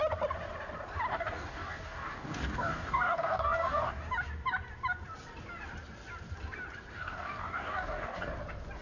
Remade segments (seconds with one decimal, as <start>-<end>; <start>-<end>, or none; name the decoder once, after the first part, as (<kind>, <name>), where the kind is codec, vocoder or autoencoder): 1.1-4.0 (codec, DAC); 6.9-8.3